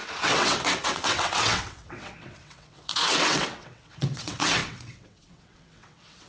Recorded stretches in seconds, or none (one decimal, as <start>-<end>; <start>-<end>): none